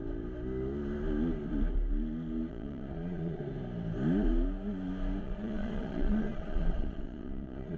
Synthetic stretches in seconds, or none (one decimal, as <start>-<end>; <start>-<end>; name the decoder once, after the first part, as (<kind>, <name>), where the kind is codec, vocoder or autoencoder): 2.5-3.4 (vocoder, Vocos); 5.2-7.8